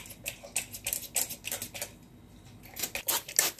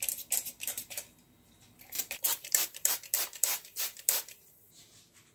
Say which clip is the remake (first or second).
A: second